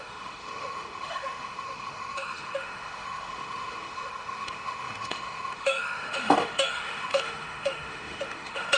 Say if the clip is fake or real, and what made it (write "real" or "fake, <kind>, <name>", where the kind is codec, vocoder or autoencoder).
fake, autoencoder, DAC-VAE